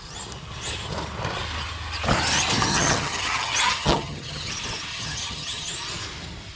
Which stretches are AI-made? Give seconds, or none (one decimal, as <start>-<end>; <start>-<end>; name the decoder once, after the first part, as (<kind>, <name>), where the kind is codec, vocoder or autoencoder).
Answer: 2.7-4.5 (vocoder, HiFi-GAN); 4.9-5.7